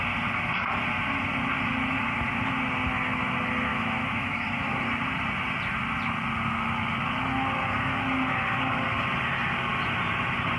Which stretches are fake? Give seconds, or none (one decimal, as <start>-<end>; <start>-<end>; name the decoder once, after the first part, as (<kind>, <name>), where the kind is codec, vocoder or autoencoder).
3.7-4.7 (autoencoder, DAC-VAE)